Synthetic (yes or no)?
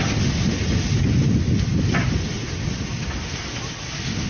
no